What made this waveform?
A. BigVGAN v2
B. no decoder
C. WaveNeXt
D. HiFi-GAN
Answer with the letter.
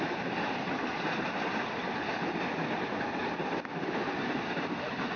B